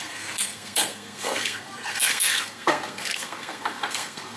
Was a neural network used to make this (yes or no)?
yes